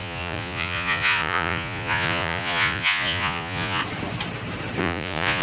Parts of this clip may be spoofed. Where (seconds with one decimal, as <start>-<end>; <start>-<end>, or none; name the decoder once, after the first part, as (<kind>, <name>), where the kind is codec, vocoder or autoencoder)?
0.0-3.8 (vocoder, Vocos); 4.8-5.4